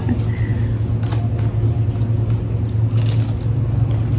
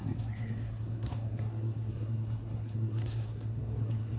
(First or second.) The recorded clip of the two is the first